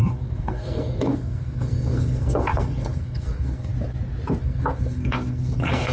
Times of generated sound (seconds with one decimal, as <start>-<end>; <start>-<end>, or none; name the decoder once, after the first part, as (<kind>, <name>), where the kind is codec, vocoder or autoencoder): 0.0-3.7 (codec, SNAC); 4.4-5.9